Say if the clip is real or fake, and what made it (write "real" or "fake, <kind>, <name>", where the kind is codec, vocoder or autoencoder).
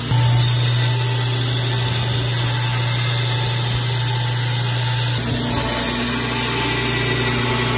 real